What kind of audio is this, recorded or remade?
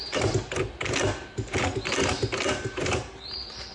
recorded